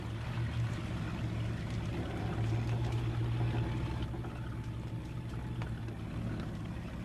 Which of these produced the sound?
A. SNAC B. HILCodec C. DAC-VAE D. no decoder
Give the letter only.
D